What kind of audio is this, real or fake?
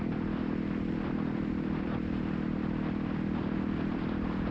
fake